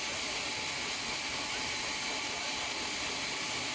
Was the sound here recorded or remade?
recorded